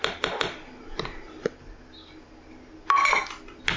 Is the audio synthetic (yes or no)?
no